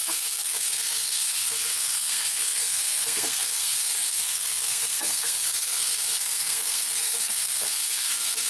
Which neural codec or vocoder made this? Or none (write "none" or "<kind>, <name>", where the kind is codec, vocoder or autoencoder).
codec, SNAC